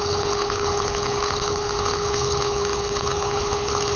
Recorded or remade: remade